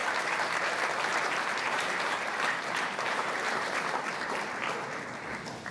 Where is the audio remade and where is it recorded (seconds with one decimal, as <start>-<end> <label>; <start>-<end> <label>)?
0.0-0.7 remade; 0.7-1.1 recorded; 1.1-4.5 remade; 4.5-5.7 recorded